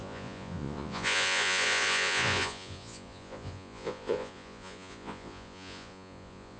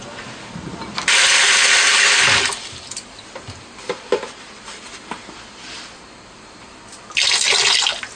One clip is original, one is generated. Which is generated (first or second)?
first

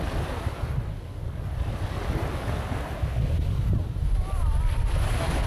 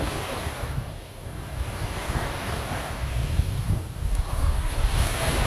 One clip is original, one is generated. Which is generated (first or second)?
second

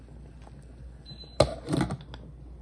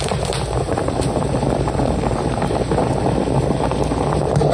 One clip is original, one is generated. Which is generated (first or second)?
second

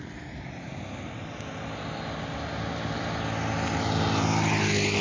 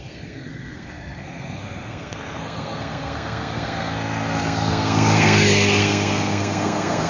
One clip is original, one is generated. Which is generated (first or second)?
second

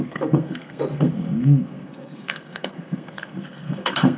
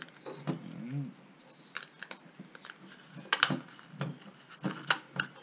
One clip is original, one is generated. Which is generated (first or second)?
first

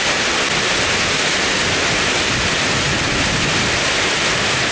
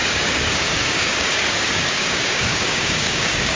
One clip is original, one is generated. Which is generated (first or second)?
second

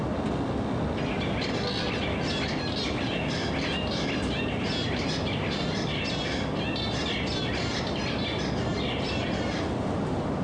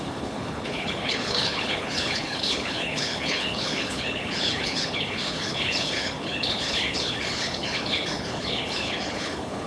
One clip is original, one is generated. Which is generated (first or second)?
second